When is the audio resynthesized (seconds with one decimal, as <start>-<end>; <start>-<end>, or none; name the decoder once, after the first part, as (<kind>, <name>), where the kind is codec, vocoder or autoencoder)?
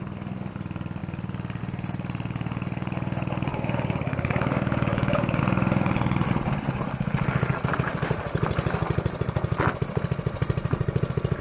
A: 3.5-5.4 (codec, DAC)